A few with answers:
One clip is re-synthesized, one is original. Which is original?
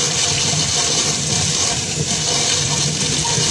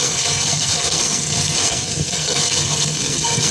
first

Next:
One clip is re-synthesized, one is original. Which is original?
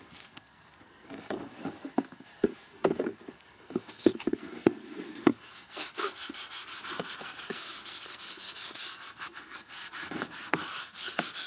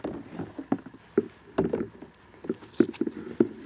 second